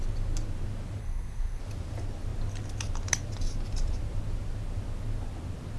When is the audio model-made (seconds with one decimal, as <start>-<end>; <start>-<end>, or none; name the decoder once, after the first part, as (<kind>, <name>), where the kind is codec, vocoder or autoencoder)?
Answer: 1.0-1.6 (codec, SNAC)